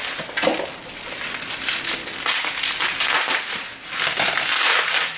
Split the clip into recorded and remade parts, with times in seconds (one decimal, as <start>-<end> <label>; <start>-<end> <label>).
0.0-5.2 recorded